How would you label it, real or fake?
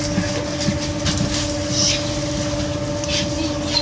real